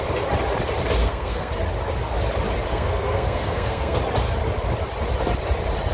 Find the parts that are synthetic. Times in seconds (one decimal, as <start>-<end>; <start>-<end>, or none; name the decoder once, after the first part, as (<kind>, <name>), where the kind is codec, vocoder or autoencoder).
1.0-1.5 (codec, SNAC); 2.7-4.0